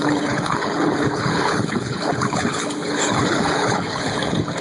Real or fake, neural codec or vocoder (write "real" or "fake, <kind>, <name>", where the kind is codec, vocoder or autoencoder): fake, codec, HILCodec